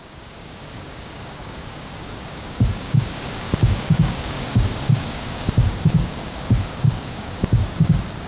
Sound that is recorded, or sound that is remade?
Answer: remade